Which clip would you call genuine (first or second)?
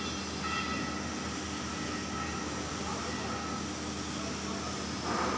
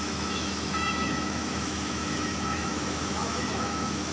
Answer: first